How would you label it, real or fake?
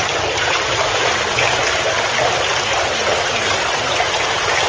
real